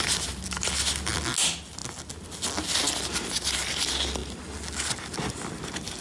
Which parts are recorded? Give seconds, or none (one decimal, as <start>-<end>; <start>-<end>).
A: 0.0-6.0